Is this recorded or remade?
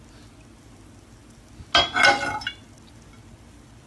recorded